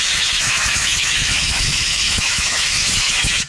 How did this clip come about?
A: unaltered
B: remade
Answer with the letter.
B